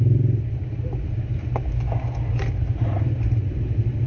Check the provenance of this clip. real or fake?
real